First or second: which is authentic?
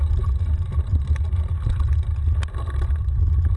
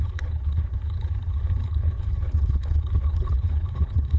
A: first